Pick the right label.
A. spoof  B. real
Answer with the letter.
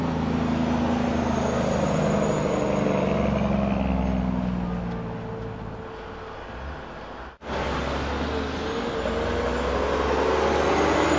B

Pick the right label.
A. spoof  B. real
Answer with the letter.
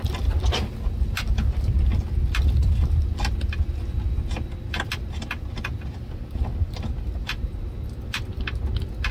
B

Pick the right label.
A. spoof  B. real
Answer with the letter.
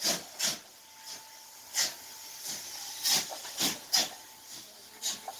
B